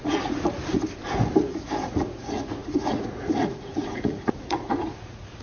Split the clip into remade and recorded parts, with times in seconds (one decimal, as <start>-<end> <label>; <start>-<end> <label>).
0.0-0.8 remade; 0.8-1.4 recorded; 1.4-5.4 remade